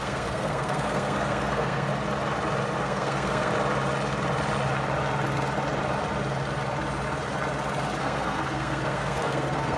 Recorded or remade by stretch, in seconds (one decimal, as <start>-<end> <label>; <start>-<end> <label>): 0.0-1.9 remade; 1.9-2.8 recorded; 2.8-3.5 remade; 3.5-8.0 recorded; 8.0-9.8 remade